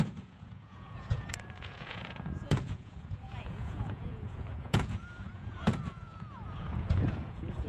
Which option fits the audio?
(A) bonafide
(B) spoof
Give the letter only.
B